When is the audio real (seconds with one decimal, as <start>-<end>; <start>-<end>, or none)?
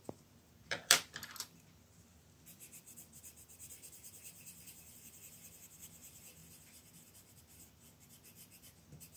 0.0-0.6; 1.1-2.1; 5.2-9.2